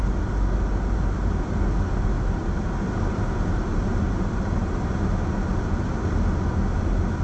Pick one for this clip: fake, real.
real